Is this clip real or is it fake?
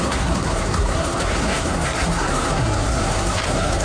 fake